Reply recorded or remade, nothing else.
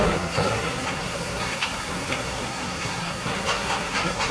remade